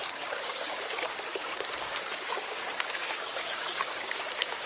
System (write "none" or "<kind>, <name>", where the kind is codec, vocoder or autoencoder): codec, DAC